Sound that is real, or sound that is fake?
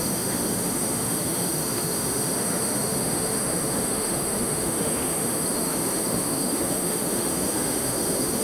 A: fake